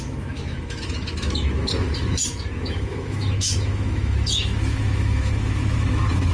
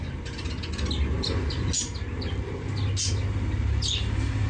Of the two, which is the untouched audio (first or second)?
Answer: second